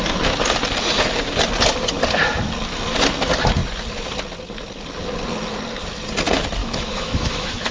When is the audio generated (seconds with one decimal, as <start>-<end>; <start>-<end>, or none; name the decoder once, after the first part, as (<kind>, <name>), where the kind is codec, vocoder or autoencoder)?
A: 6.6-7.7 (autoencoder, DAC-VAE)